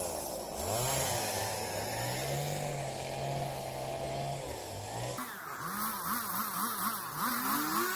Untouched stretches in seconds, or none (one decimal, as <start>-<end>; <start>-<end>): 0.0-8.0